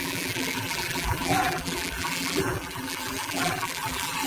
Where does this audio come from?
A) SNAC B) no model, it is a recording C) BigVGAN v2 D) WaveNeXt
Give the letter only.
C